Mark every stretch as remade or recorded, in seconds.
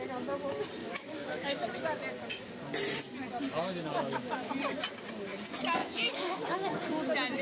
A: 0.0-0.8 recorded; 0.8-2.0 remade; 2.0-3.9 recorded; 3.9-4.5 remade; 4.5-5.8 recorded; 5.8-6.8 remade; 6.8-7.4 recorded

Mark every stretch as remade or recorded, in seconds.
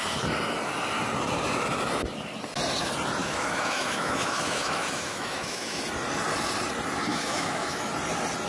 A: 0.0-3.2 recorded; 3.2-5.8 remade; 5.8-7.1 recorded; 7.1-7.9 remade; 7.9-8.5 recorded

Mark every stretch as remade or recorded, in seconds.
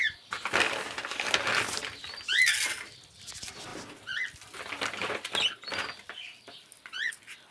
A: 0.0-7.5 recorded